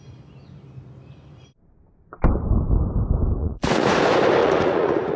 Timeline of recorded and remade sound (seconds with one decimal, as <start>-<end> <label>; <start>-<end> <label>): 0.0-3.4 recorded; 3.4-4.0 remade; 4.0-4.4 recorded; 4.4-5.2 remade